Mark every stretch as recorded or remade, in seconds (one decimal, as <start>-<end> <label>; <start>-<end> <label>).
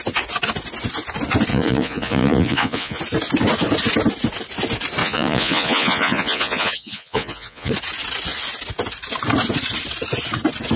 0.0-1.5 recorded; 1.5-3.0 remade; 3.0-5.0 recorded; 5.0-7.7 remade; 7.7-10.8 recorded